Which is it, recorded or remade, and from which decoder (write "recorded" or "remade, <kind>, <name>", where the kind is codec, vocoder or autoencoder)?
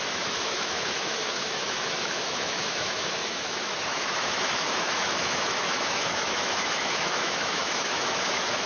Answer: remade, autoencoder, DAC-VAE